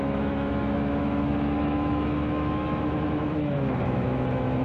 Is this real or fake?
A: fake